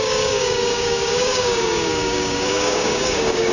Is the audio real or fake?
fake